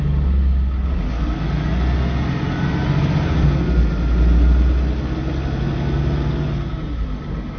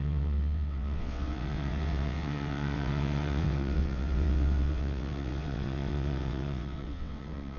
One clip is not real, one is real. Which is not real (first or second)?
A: second